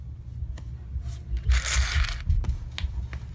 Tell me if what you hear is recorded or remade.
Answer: recorded